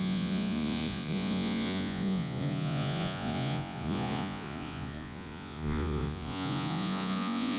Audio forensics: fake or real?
fake